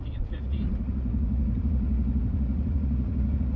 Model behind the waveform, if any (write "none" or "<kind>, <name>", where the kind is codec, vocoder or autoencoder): vocoder, Vocos